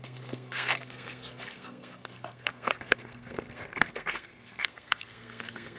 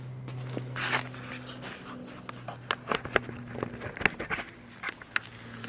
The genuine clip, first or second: second